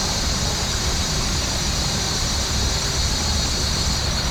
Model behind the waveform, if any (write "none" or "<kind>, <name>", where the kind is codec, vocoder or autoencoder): vocoder, BigVGAN v2